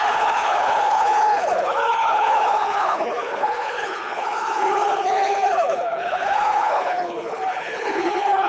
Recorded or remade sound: remade